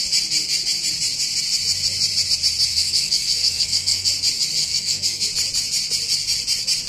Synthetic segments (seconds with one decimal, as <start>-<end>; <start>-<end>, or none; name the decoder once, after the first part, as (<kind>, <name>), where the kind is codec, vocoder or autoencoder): 2.7-4.1 (codec, SNAC); 4.6-5.3